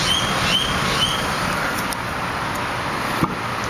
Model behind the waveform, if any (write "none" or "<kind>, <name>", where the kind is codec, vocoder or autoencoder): none